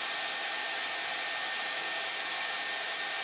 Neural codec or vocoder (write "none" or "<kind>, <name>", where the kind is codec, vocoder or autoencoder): none